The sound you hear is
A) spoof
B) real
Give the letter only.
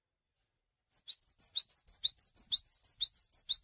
B